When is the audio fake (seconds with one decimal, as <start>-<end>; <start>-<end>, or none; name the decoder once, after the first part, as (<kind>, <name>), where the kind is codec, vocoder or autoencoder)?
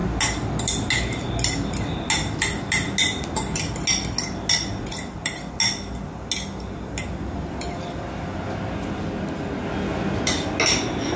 none